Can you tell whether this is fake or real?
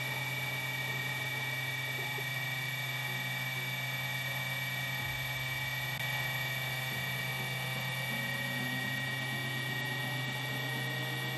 real